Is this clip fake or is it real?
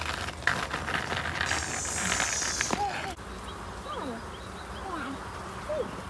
real